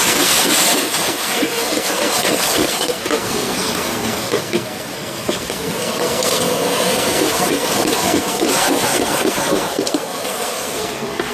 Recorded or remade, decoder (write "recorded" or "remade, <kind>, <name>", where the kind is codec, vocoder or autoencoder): remade, codec, SNAC